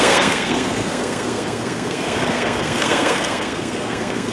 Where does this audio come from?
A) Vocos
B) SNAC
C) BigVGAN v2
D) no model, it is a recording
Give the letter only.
B